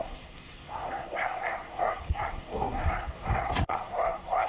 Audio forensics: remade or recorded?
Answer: remade